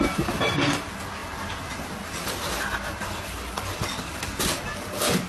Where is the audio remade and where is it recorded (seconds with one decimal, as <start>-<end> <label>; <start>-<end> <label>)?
0.0-5.3 recorded